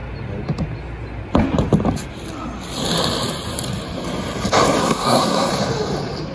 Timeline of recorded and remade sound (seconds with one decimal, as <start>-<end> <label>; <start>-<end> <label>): 0.0-4.8 recorded; 4.8-5.5 remade; 5.5-6.3 recorded